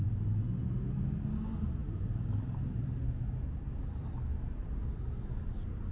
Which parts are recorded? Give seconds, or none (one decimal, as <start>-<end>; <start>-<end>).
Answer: 0.0-5.9